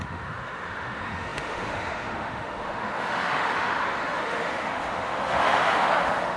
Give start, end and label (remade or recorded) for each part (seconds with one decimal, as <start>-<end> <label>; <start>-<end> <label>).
0.0-6.4 remade